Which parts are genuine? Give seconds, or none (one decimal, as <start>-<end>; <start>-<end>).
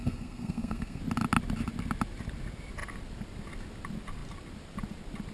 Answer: 1.0-5.3